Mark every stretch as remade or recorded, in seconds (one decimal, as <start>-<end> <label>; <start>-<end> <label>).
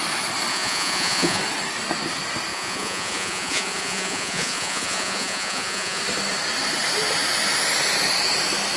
0.0-0.5 recorded; 0.5-1.4 remade; 1.4-2.5 recorded; 2.5-6.0 remade; 6.0-8.8 recorded